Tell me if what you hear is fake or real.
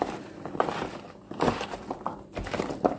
real